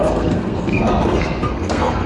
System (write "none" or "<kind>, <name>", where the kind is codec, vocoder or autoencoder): codec, SNAC